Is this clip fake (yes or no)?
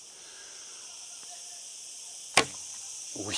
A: no